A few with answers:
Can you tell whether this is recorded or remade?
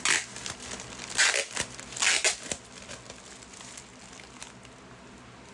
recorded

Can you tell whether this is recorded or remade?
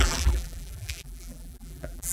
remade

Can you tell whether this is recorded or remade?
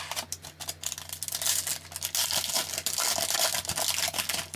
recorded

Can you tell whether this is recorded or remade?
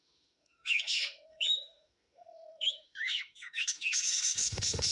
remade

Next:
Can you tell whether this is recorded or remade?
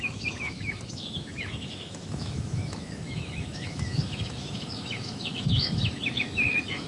remade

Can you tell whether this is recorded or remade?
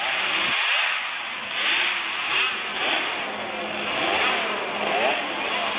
recorded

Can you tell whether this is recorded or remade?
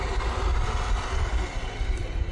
recorded